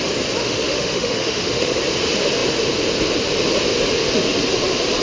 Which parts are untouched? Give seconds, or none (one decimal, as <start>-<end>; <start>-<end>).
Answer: 0.0-0.4; 1.8-5.0